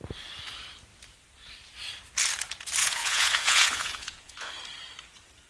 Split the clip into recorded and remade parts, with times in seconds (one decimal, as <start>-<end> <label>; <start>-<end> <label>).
0.0-2.8 recorded; 2.8-4.5 remade; 4.5-5.5 recorded